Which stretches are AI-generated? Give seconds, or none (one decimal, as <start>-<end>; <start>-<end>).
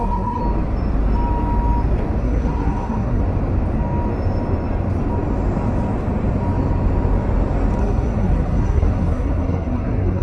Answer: 0.0-0.4; 2.2-3.2; 7.8-10.2